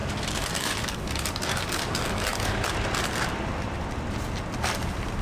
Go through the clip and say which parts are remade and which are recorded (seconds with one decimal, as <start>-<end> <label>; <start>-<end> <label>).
0.0-1.1 remade; 1.1-1.5 recorded; 1.5-2.6 remade; 2.6-5.2 recorded